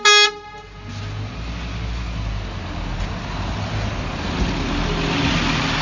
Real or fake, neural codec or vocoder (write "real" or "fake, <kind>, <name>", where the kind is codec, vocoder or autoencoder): real